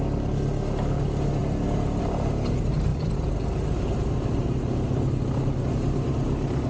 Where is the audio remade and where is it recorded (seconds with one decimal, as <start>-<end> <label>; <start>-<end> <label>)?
0.0-6.7 recorded